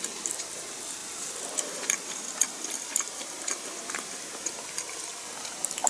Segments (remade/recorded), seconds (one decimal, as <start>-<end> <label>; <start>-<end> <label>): 0.0-1.0 recorded; 1.0-4.5 remade; 4.5-5.9 recorded